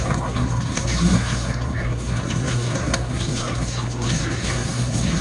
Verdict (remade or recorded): remade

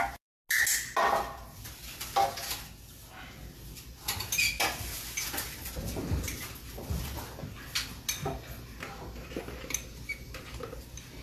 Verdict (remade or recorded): recorded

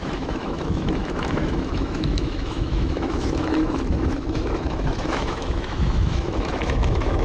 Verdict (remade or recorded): remade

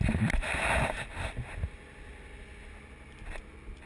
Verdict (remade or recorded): recorded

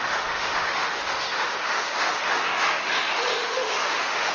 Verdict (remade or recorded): remade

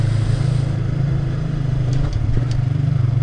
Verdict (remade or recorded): remade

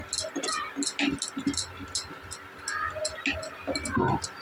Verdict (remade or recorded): recorded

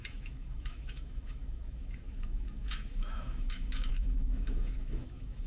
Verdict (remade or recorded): remade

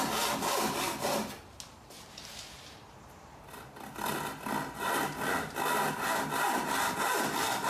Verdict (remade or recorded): recorded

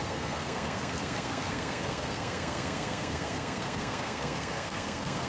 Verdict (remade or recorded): remade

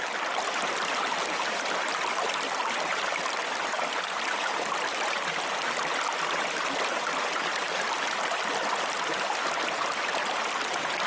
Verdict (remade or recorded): recorded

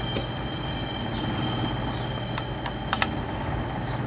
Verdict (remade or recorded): recorded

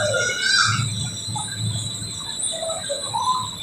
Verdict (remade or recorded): remade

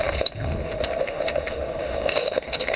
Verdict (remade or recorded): remade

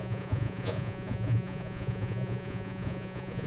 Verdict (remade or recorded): remade